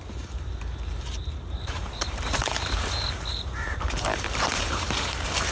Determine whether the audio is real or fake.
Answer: fake